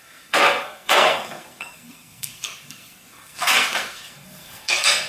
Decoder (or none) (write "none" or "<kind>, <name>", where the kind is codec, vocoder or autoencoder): codec, SNAC